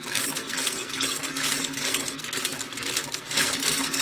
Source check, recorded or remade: remade